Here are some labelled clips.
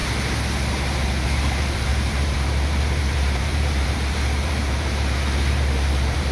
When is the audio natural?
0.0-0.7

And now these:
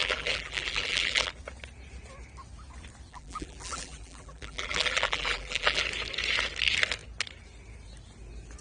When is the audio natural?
1.3-3.1; 5.8-8.6

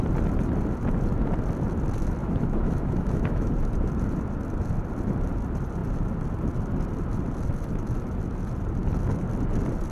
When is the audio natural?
0.0-2.2; 3.5-9.9

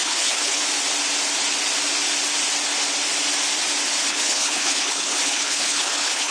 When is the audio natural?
0.6-4.0

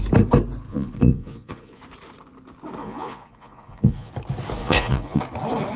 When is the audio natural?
0.0-0.7; 1.8-2.8; 4.1-4.6; 5.2-5.8

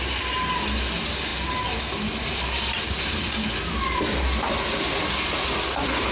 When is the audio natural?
0.0-6.1

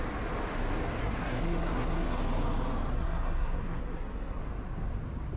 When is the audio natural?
0.0-1.0; 2.2-2.9; 4.4-5.4

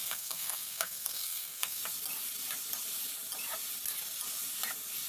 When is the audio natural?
1.8-5.1